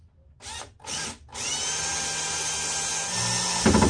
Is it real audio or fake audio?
real